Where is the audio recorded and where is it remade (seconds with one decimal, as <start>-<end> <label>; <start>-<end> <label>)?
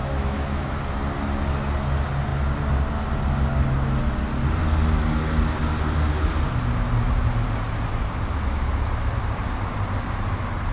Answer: 0.0-0.7 remade; 0.7-10.7 recorded